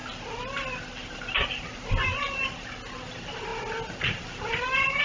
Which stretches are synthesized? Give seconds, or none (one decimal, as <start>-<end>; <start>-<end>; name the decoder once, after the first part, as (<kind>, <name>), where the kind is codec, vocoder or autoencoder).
none

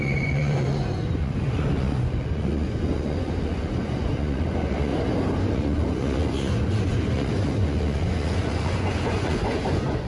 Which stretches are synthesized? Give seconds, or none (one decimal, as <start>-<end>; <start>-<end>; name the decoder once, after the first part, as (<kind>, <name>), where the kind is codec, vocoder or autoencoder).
0.0-4.9 (vocoder, Vocos); 5.4-10.1

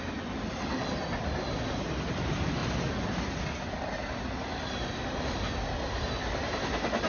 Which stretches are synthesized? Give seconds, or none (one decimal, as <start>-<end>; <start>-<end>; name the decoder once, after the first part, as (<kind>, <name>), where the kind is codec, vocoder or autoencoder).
none

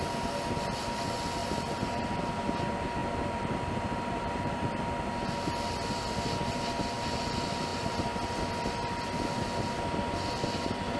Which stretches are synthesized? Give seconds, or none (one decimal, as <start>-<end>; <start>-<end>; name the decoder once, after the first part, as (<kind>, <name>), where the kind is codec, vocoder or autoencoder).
1.4-2.3 (vocoder, BigVGAN v2); 3.0-4.9